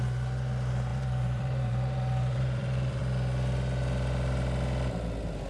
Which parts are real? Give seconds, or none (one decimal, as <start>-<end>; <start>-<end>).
0.0-0.9; 3.0-5.5